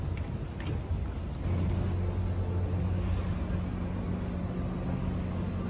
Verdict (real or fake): real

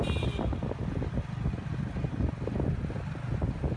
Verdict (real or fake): real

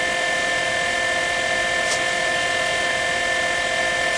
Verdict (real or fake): real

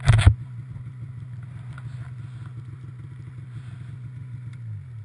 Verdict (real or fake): real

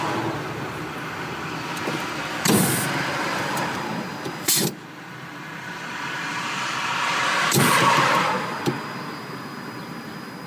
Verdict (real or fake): fake